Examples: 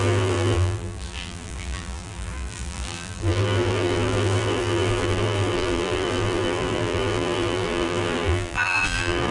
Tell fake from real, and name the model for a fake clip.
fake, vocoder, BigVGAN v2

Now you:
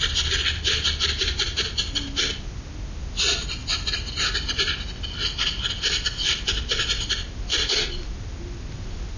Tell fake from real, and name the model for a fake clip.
real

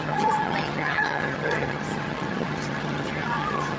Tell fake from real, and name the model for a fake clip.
fake, vocoder, HiFi-GAN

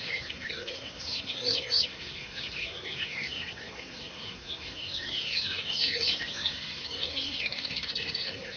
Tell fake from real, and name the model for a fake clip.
fake, codec, SNAC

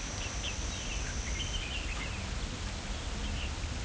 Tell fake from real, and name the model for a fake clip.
real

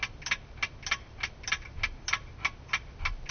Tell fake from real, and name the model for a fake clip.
real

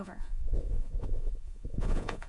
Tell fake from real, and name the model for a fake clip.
fake, vocoder, Vocos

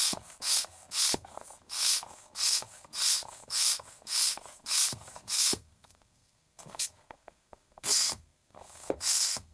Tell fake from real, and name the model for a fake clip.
fake, codec, SNAC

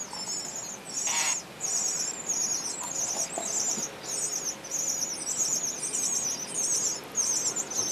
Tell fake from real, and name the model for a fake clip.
real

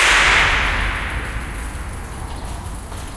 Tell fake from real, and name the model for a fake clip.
real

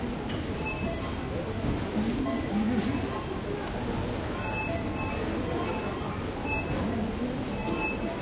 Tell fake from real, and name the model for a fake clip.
real